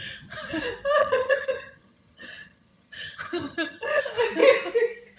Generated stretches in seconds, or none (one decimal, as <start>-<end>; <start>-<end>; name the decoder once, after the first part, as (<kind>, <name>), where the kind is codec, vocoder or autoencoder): 1.0-4.0 (vocoder, HiFi-GAN)